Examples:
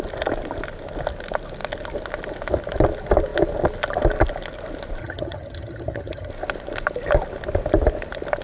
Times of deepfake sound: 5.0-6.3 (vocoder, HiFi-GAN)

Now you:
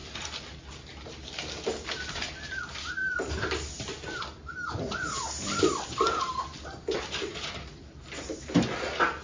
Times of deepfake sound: 3.0-8.0 (vocoder, BigVGAN v2)

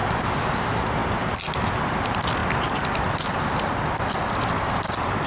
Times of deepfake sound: none

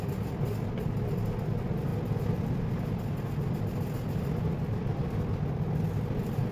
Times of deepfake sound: none